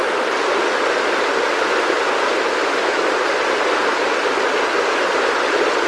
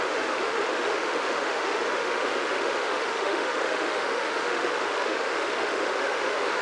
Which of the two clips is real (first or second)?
first